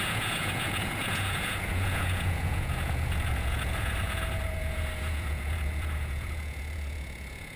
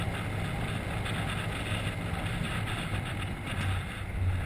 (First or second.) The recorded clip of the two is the second